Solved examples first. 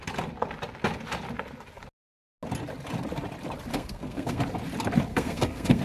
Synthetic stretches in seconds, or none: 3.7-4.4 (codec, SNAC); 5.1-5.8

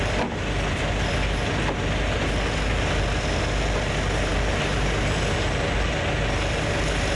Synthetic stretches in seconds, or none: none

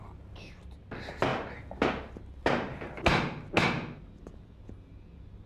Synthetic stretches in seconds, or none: none

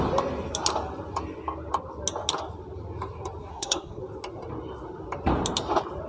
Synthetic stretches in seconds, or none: 3.5-4.0 (codec, SNAC)